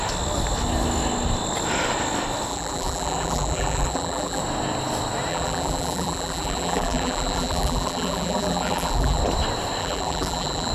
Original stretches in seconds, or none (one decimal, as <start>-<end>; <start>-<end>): 0.0-2.5; 4.4-5.3; 9.2-9.8